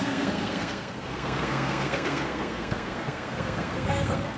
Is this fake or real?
fake